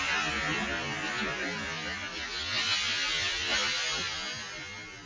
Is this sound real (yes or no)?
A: yes